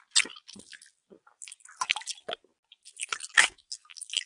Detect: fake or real real